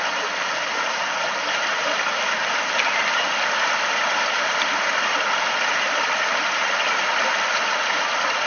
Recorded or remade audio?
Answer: recorded